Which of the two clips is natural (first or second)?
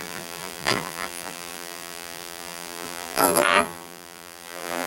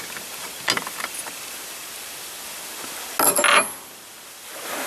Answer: second